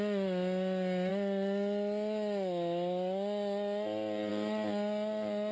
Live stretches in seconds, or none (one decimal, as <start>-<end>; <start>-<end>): 0.0-5.5